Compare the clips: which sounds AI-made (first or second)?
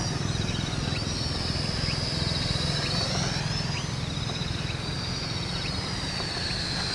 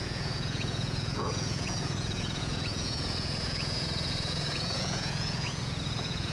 second